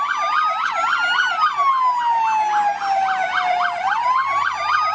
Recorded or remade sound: recorded